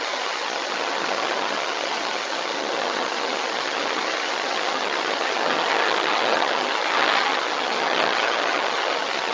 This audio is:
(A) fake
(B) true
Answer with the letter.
A